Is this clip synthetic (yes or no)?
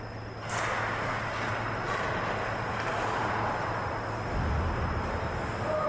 no